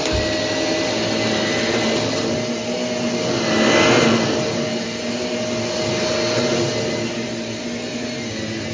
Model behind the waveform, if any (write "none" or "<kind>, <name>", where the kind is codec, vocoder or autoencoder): none